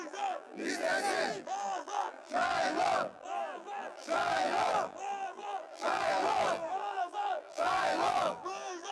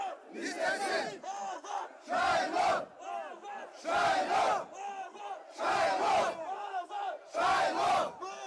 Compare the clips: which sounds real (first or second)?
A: second